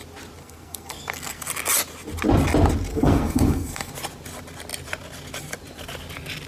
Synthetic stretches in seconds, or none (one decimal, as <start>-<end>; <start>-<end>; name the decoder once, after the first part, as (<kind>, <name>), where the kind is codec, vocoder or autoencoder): 0.4-1.5 (codec, SNAC); 2.9-3.9